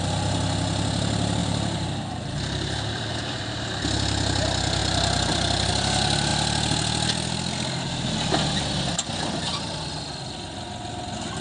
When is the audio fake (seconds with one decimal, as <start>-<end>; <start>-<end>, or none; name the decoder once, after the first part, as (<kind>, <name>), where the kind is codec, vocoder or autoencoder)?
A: 1.4-3.7 (vocoder, BigVGAN v2); 4.8-5.7